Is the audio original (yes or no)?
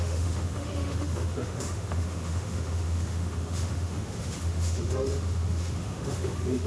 no